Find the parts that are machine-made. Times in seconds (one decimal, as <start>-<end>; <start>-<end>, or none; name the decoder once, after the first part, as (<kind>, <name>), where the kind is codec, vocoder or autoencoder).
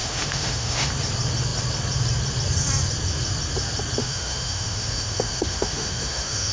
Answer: 0.0-0.9 (autoencoder, DAC-VAE); 4.0-6.5